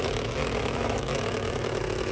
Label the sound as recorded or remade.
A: remade